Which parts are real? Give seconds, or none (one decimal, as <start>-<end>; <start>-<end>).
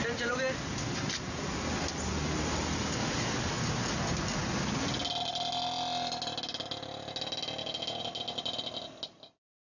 0.0-9.6